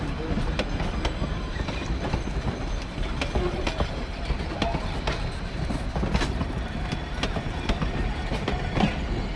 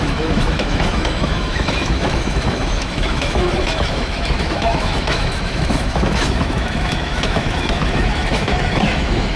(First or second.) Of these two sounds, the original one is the first